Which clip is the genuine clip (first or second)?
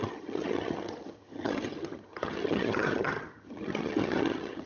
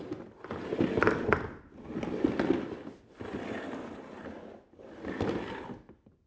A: second